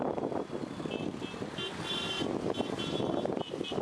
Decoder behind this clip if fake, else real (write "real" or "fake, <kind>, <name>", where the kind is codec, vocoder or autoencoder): real